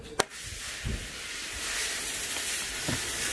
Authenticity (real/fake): real